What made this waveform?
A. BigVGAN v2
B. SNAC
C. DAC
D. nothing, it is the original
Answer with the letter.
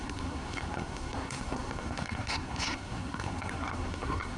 B